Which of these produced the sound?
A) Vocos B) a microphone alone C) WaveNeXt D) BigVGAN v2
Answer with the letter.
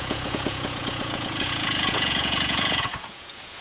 A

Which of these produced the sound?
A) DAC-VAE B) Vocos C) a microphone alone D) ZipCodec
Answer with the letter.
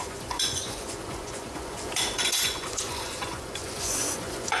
B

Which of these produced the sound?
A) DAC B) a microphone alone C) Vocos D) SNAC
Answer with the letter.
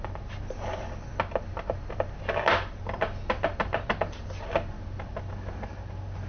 B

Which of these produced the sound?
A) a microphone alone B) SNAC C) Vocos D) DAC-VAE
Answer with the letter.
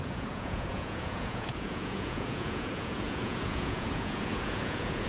C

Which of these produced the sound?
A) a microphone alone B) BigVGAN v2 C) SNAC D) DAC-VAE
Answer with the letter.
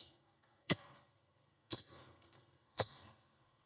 C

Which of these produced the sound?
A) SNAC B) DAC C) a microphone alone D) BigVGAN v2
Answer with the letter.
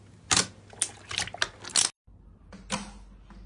C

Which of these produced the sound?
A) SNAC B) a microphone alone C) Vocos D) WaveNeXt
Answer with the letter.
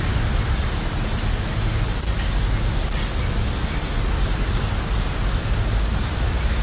B